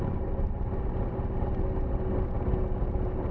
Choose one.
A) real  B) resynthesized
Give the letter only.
A